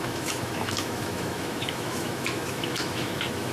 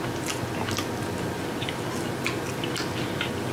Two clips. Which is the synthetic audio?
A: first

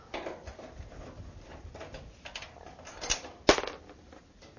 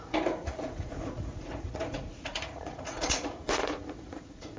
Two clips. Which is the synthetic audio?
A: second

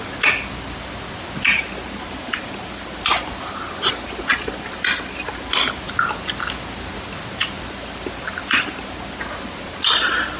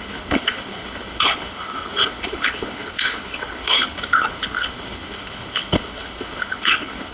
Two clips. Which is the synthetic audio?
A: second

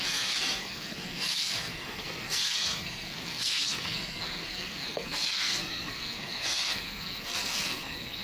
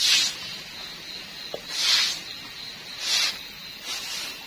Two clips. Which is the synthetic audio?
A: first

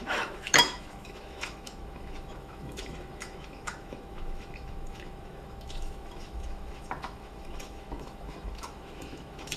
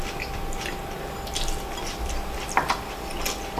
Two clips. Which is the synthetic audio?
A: first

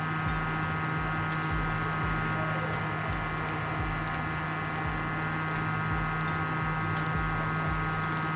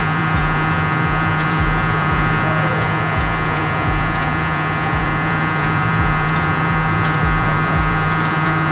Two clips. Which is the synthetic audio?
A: second